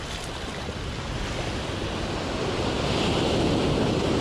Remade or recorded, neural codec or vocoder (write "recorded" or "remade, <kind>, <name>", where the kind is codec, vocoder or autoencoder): recorded